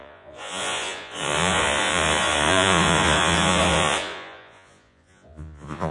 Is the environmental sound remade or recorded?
remade